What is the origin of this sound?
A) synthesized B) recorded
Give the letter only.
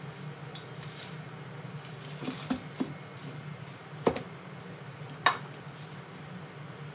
B